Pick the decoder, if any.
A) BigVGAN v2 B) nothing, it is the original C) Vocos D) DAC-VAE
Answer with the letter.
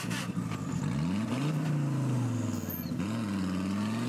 B